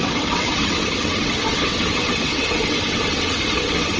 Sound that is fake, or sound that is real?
fake